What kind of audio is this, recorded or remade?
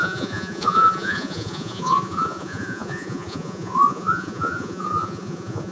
remade